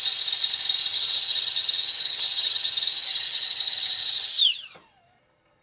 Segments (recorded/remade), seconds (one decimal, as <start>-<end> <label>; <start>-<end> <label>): 0.0-0.9 recorded; 0.9-4.3 remade; 4.3-5.6 recorded